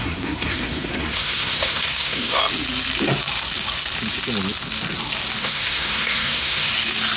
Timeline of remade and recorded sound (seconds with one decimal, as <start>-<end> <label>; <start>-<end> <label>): 0.0-2.4 remade; 2.4-5.4 recorded; 5.4-6.7 remade; 6.7-7.2 recorded